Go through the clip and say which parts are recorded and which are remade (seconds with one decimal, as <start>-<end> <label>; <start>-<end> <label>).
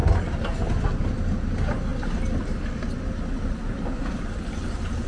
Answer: 0.0-5.1 recorded